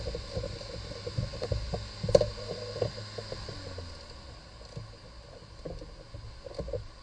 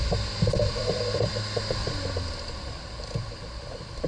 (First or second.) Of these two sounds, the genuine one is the first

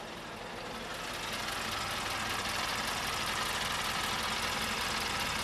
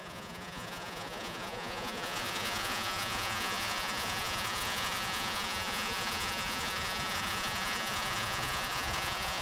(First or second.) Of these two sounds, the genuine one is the first